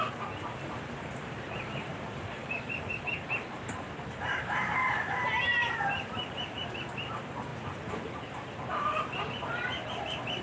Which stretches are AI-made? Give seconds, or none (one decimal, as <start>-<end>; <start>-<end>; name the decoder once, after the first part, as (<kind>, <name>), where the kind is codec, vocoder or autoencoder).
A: 0.0-7.5 (vocoder, BigVGAN v2); 8.3-10.4